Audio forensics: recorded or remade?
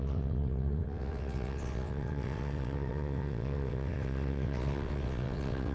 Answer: remade